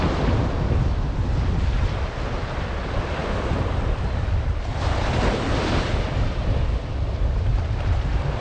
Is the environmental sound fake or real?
real